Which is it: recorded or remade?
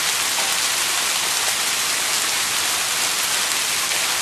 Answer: recorded